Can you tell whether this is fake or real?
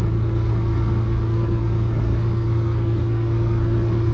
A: fake